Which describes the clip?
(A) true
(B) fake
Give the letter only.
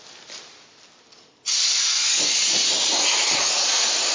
A